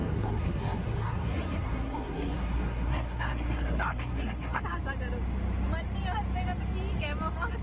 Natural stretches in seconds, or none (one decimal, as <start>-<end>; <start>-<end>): 4.6-7.6